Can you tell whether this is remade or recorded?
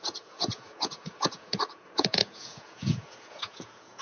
remade